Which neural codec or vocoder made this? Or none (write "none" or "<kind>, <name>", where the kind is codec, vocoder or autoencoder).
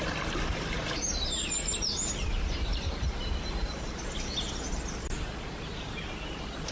none